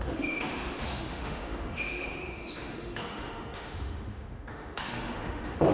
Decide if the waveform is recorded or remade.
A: remade